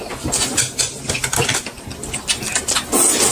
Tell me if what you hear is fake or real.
real